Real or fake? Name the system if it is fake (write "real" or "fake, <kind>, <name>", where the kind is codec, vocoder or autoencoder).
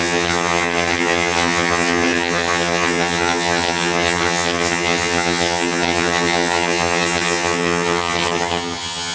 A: fake, vocoder, HiFi-GAN